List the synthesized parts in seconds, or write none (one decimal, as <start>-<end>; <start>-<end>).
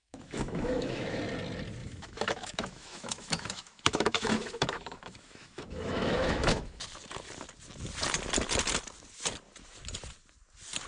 0.0-1.2; 1.8-6.8